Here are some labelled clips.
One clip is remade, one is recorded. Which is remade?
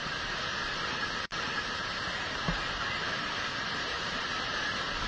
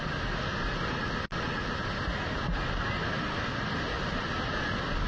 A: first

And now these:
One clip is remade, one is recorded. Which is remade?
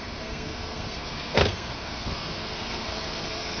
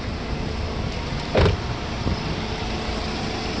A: first